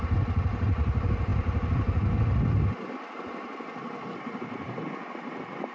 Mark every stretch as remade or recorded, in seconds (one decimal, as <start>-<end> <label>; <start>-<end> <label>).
0.0-5.7 recorded